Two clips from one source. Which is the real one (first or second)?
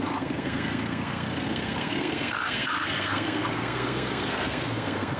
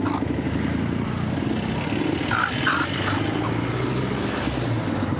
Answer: second